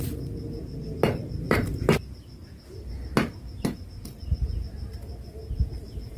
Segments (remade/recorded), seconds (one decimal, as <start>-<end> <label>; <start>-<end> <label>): 0.0-1.2 recorded; 1.2-2.1 remade; 2.1-5.4 recorded; 5.4-6.2 remade